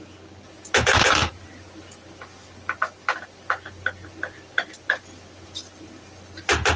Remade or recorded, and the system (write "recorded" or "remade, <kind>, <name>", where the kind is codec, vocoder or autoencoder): recorded